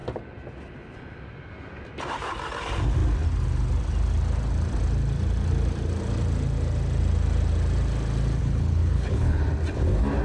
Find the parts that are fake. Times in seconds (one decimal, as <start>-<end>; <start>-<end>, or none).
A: 8.4-9.4